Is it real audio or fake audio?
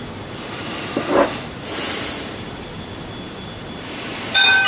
fake